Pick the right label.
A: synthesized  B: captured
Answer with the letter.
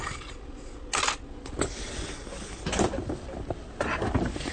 B